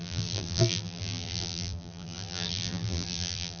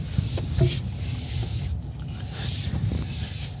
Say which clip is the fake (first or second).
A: first